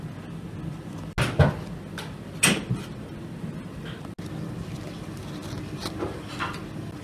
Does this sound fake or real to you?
real